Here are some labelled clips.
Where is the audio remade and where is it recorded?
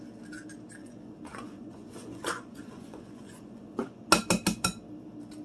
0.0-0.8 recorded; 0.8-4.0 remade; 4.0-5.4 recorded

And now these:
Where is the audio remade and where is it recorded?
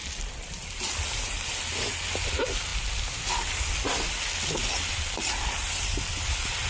0.0-6.7 recorded